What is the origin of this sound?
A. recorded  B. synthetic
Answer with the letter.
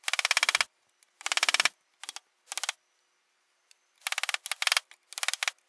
A